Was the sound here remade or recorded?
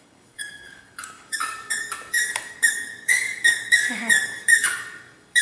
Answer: remade